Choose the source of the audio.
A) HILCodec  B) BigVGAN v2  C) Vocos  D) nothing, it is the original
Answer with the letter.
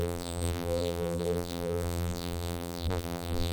B